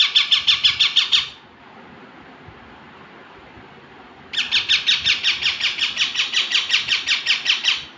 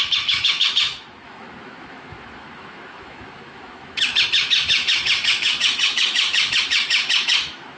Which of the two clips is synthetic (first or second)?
second